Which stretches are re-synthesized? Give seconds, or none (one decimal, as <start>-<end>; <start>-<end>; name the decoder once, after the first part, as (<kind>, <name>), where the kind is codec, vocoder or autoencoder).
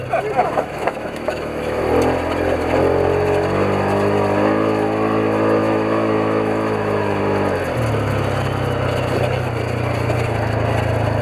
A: 0.4-1.8 (autoencoder, DAC-VAE); 5.6-7.2